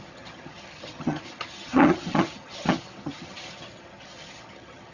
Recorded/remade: remade